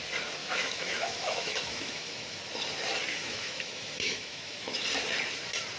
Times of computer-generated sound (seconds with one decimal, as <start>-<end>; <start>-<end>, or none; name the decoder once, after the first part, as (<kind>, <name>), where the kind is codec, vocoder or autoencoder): 0.4-2.4 (autoencoder, DAC-VAE); 3.1-4.8